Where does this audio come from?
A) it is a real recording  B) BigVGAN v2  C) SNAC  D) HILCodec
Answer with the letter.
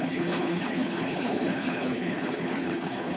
D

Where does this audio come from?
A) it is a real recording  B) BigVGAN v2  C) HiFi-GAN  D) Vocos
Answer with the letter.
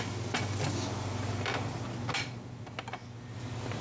A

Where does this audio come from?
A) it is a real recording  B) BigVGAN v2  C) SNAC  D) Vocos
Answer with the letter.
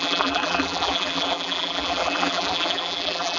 B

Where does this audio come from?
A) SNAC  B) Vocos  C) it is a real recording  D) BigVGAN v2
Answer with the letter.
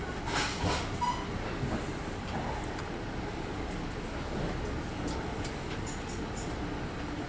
C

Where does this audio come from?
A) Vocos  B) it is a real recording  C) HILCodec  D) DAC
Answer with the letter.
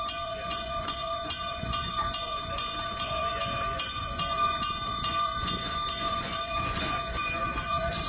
A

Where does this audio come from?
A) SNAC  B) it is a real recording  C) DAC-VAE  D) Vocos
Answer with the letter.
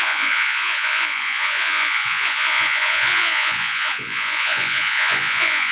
D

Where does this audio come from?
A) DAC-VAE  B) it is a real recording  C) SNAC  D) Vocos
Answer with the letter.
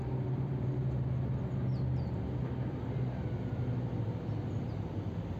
B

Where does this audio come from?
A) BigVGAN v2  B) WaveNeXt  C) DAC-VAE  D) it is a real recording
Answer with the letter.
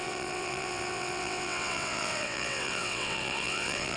B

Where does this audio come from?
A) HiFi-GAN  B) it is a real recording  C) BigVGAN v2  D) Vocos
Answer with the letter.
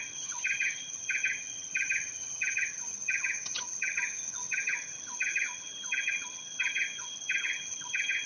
A